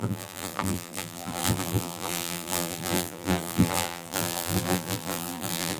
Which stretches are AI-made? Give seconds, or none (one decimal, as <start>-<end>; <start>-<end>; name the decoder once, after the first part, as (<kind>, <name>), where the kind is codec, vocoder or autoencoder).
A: 0.0-5.8 (vocoder, BigVGAN v2)